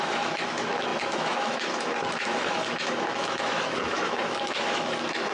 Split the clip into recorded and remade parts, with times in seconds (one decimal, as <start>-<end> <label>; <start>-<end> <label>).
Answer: 0.0-5.3 remade